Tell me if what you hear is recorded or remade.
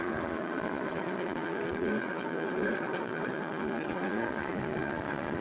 remade